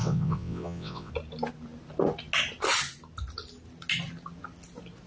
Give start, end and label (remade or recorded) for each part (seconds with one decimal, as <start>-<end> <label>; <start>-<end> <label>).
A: 0.0-1.1 remade; 1.1-5.1 recorded

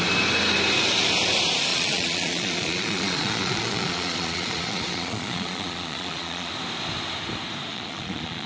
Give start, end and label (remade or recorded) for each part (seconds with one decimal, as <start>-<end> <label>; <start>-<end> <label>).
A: 0.0-1.7 recorded; 1.7-6.5 remade; 6.5-7.7 recorded; 7.7-8.5 remade

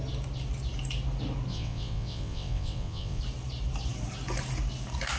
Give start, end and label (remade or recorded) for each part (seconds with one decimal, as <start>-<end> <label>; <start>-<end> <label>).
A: 0.0-1.5 recorded; 1.5-3.2 remade; 3.2-5.2 recorded

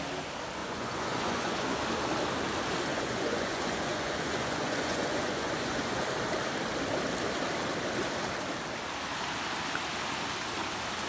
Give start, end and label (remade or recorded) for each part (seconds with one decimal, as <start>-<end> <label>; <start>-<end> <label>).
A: 0.0-0.6 recorded; 0.6-1.8 remade; 1.8-2.9 recorded; 2.9-6.0 remade; 6.0-11.1 recorded

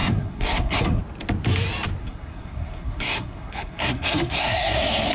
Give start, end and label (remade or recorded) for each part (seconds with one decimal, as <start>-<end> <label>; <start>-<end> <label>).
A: 0.0-1.0 remade; 1.0-2.0 recorded; 2.0-5.1 remade

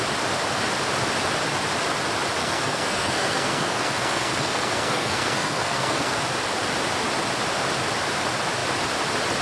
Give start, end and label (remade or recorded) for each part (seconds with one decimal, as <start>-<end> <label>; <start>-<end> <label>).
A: 0.0-2.4 recorded; 2.4-6.2 remade; 6.2-9.4 recorded

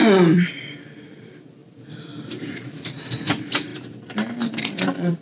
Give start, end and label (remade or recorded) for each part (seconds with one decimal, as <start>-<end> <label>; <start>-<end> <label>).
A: 0.0-3.7 remade; 3.7-4.6 recorded; 4.6-5.2 remade